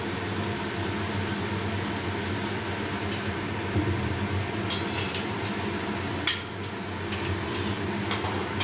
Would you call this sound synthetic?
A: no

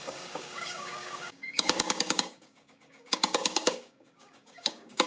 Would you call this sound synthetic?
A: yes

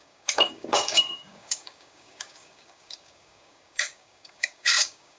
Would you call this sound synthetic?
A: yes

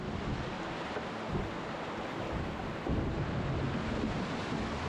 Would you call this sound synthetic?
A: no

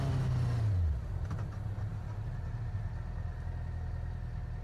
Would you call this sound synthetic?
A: no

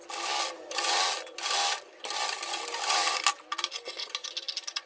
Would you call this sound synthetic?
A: no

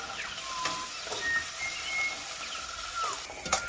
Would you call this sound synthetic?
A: no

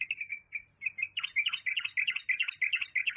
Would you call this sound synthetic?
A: no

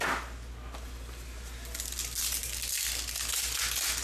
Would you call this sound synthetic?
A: no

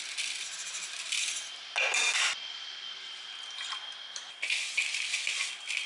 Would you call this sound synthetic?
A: no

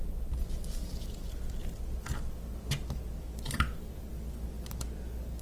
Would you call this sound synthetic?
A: no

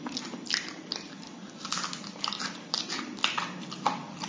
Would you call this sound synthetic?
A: no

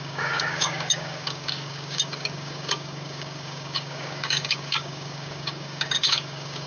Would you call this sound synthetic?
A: yes